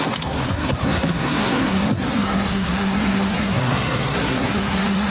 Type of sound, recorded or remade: remade